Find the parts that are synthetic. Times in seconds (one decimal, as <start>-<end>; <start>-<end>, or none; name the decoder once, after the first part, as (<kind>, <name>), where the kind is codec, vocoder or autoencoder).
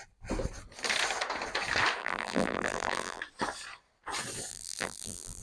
2.0-3.2 (vocoder, BigVGAN v2); 4.5-5.4